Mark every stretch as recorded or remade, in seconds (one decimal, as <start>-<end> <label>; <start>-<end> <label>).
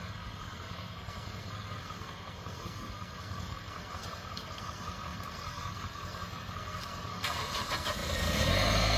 0.0-9.0 remade